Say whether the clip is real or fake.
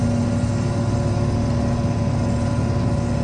real